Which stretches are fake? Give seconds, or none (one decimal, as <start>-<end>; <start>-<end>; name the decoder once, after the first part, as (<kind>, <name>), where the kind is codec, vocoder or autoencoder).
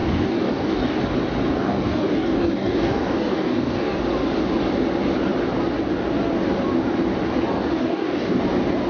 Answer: 0.0-1.0 (codec, DAC); 1.5-4.0; 7.5-8.4